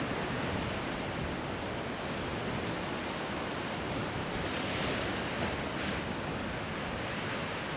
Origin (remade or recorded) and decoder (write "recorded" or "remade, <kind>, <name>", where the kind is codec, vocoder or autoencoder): recorded